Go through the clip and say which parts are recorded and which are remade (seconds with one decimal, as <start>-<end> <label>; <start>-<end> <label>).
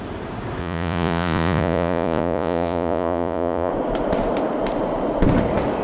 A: 0.0-0.6 recorded; 0.6-3.7 remade; 3.7-5.8 recorded